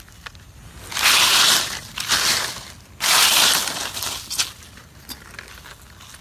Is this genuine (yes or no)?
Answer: yes